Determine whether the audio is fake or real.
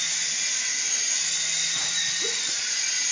real